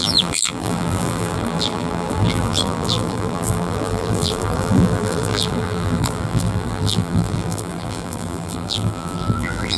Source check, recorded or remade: remade